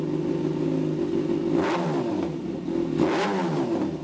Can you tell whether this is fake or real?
real